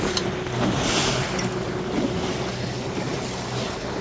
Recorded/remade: recorded